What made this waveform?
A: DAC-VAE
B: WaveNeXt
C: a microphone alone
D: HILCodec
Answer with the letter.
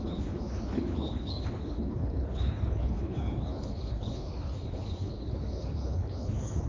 D